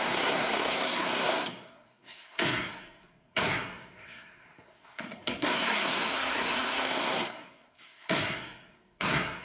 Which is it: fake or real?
fake